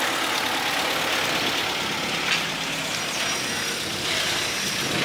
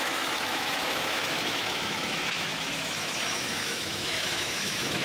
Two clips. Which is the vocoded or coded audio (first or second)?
second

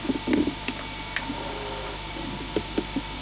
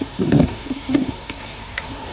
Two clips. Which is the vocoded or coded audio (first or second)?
second